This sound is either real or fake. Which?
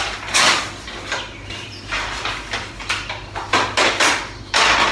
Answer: real